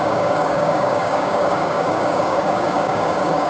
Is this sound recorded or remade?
remade